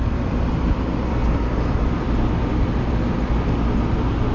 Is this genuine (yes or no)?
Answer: no